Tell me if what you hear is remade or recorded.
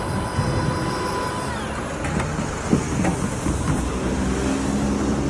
recorded